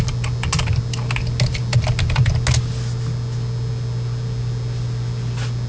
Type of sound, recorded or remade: recorded